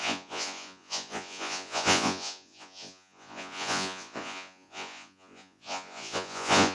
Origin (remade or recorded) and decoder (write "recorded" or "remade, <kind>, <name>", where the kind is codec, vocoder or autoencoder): remade, vocoder, Vocos